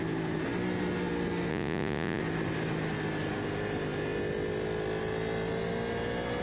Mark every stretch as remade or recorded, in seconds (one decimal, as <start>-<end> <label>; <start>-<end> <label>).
0.0-1.5 recorded; 1.5-2.2 remade; 2.2-6.4 recorded